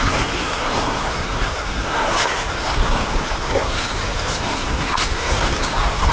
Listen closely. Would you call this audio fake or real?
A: fake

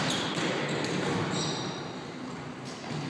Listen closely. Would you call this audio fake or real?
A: real